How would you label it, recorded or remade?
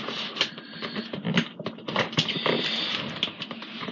recorded